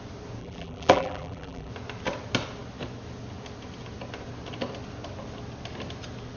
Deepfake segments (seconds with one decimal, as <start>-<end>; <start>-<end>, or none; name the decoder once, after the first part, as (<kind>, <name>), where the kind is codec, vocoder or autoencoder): 0.4-1.7 (vocoder, BigVGAN v2)